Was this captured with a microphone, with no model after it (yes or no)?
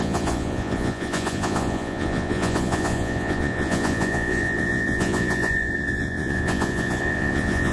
no